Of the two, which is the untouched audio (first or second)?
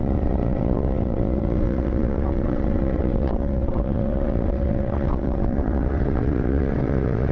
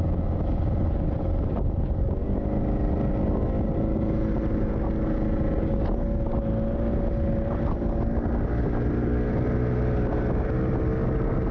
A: second